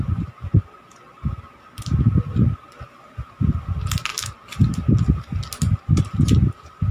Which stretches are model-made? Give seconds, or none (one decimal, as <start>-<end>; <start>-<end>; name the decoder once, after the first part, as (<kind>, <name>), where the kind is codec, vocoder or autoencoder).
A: none